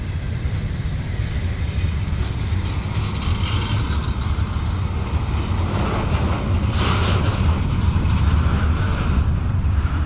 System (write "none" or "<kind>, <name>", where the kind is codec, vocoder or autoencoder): none